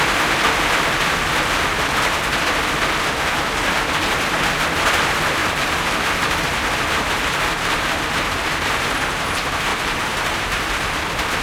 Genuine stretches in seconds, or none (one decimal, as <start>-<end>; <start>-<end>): 0.0-5.4; 8.9-9.7; 10.6-11.4